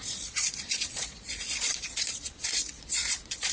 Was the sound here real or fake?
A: fake